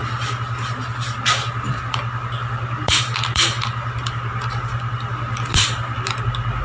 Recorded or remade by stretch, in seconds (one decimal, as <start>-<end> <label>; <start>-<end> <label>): 0.0-6.6 remade